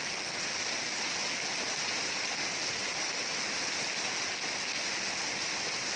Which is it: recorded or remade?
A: recorded